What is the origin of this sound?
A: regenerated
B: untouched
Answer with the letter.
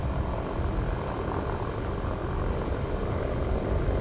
B